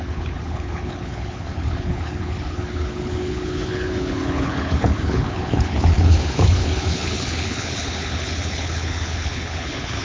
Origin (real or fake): fake